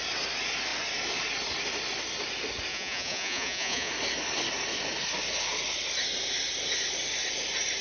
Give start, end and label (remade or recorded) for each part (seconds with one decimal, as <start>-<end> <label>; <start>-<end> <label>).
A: 0.0-2.7 recorded; 2.7-3.9 remade; 3.9-7.8 recorded